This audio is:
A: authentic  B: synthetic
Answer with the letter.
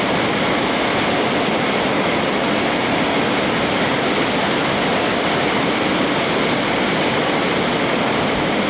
A